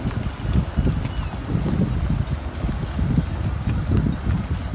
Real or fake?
real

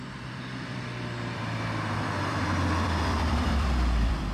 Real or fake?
fake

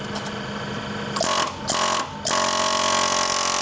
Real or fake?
real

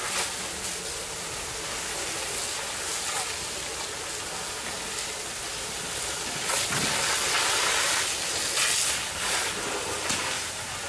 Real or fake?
real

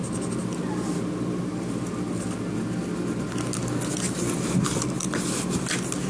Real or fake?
real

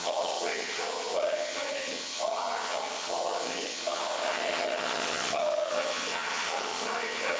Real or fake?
fake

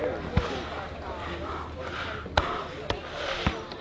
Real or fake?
real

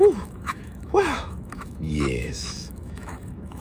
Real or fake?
fake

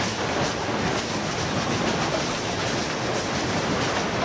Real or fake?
real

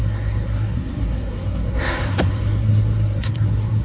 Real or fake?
fake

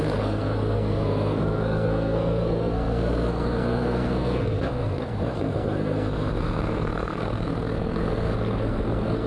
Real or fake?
fake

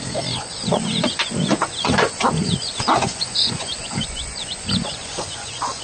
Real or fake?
fake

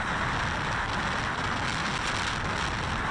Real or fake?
real